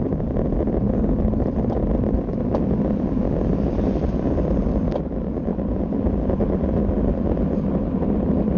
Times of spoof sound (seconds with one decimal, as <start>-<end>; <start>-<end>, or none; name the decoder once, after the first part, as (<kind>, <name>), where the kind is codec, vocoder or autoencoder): none